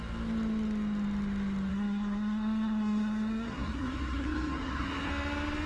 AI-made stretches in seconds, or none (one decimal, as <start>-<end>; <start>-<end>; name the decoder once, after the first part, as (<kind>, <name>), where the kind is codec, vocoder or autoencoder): 1.7-5.1 (codec, SNAC)

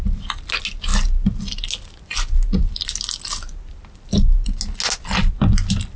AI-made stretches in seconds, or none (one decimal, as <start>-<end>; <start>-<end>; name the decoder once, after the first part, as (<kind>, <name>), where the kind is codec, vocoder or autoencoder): none

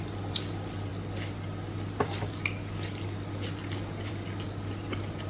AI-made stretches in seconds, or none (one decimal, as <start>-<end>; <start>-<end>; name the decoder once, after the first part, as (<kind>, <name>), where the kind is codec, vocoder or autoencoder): none

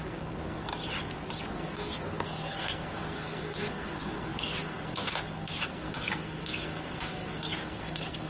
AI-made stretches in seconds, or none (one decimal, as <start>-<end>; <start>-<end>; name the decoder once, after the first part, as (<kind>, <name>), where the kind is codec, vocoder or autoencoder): 0.0-0.7 (codec, SNAC); 1.5-8.3

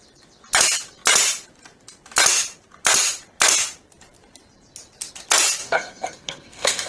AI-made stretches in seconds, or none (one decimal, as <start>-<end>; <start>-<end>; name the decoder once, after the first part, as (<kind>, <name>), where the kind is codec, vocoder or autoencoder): 5.6-6.9 (codec, SNAC)

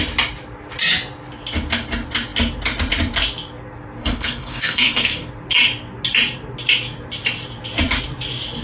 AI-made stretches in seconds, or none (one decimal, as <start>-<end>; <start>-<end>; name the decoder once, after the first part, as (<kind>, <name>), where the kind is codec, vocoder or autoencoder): 4.0-5.3 (codec, SNAC)

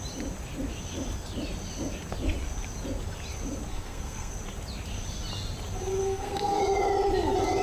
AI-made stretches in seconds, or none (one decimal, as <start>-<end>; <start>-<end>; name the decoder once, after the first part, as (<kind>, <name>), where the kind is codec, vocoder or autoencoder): 3.7-4.3 (codec, SNAC); 6.0-6.6

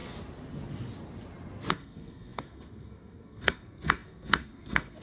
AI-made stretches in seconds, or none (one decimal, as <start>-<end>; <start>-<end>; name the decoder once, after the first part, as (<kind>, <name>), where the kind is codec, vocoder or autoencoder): 1.7-5.0 (codec, SNAC)